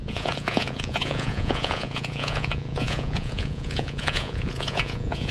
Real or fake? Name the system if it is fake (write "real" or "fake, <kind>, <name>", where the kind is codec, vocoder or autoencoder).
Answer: fake, vocoder, Vocos